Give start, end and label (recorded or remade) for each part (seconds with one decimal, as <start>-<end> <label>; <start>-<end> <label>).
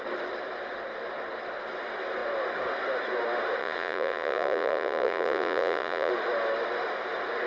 0.0-3.6 recorded; 3.6-6.1 remade; 6.1-7.5 recorded